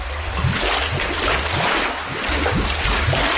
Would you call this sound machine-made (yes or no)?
no